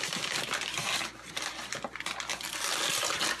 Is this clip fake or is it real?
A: fake